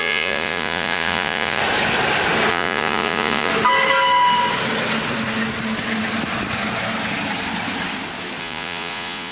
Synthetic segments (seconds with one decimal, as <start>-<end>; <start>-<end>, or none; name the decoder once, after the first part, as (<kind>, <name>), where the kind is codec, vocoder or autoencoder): 0.0-1.6 (vocoder, Vocos); 2.5-3.5; 8.4-9.3